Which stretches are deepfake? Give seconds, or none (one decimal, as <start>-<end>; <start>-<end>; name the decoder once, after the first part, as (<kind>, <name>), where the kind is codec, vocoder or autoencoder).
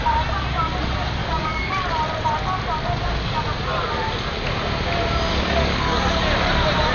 1.2-1.9 (codec, DAC); 5.3-6.0